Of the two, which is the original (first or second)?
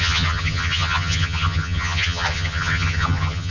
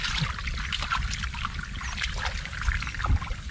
second